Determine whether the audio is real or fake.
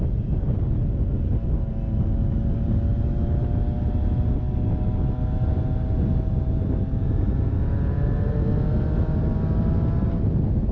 real